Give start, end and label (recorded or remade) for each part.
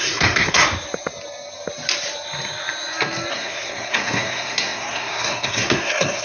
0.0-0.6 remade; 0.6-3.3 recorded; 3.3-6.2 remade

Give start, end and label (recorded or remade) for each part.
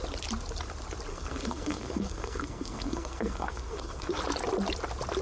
0.0-1.1 recorded; 1.1-4.2 remade; 4.2-5.2 recorded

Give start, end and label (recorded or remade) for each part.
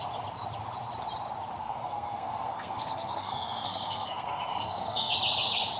0.0-1.6 recorded; 1.6-5.1 remade; 5.1-5.8 recorded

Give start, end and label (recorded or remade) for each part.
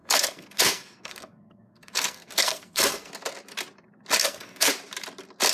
0.0-3.1 remade; 3.1-4.2 recorded; 4.2-4.7 remade; 4.7-5.5 recorded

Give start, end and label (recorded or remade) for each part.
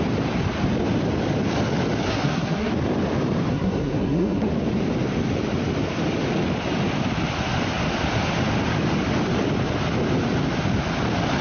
0.0-2.1 recorded; 2.1-2.7 remade; 2.7-3.5 recorded; 3.5-4.5 remade; 4.5-11.4 recorded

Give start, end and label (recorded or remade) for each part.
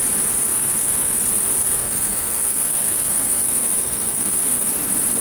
0.0-0.5 recorded; 0.5-1.2 remade; 1.2-1.6 recorded; 1.6-4.7 remade; 4.7-5.2 recorded